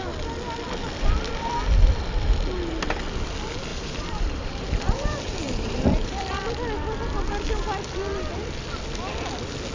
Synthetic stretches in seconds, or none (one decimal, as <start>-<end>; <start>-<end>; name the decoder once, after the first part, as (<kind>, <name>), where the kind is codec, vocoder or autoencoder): 3.7-6.2 (vocoder, BigVGAN v2)

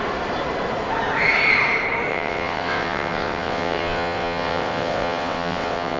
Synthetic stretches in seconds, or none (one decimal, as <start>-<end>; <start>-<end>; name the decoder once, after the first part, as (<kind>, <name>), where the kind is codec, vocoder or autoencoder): 2.1-6.0 (vocoder, WaveNeXt)

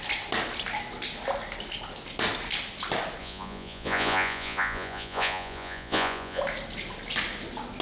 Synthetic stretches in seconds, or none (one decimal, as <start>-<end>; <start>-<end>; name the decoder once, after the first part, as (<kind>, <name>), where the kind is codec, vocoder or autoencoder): 3.2-6.4 (vocoder, Vocos)

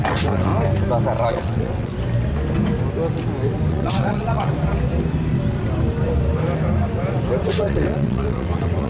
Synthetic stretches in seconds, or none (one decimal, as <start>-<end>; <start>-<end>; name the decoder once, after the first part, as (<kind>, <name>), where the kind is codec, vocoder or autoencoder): 0.0-0.5 (vocoder, WaveNeXt); 1.3-1.9; 3.7-4.5; 7.4-8.9

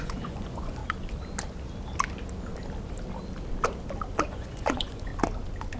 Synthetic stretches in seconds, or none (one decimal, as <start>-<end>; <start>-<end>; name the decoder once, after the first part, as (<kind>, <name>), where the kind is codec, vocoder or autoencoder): 0.0-0.8 (vocoder, Vocos); 4.3-5.1

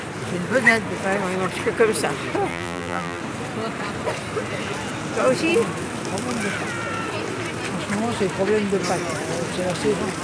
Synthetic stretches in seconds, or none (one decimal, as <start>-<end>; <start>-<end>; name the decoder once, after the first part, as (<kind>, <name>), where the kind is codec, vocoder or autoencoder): 2.5-3.2 (vocoder, BigVGAN v2)

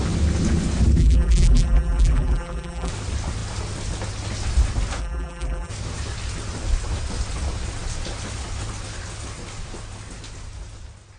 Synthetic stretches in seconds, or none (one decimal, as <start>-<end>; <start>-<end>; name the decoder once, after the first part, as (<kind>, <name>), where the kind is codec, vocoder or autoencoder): 1.0-2.9 (vocoder, BigVGAN v2); 5.0-5.7

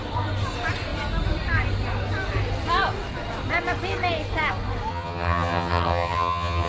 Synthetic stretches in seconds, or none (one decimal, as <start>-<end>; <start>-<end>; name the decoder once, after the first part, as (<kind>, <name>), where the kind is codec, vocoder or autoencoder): 4.9-6.7 (vocoder, HiFi-GAN)